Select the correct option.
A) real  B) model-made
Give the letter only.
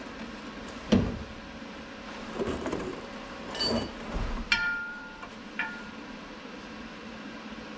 B